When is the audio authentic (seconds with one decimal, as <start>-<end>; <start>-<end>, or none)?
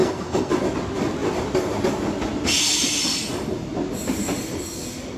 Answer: 0.5-5.2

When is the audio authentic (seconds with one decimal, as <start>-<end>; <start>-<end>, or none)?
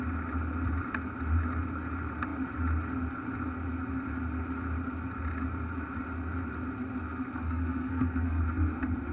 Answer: 0.0-7.4; 8.4-9.1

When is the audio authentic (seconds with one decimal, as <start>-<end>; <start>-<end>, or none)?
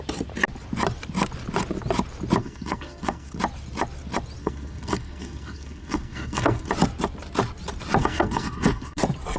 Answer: 0.0-2.4; 3.4-4.4; 6.7-8.0; 9.0-9.4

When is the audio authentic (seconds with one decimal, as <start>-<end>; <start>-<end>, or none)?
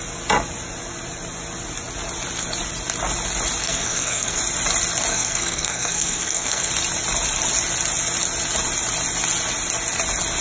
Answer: 0.0-3.6; 4.4-5.1; 6.7-10.4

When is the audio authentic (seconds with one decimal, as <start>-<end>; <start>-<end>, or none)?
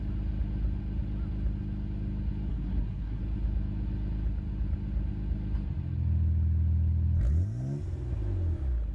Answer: 0.0-2.5; 3.2-8.9